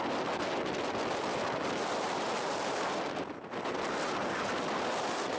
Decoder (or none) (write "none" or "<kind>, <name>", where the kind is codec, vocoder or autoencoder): none